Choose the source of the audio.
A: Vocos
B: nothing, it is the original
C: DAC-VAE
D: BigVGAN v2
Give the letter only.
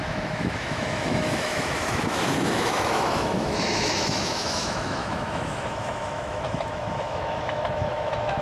C